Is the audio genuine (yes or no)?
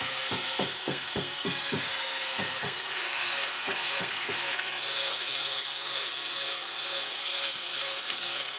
no